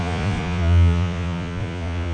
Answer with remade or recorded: remade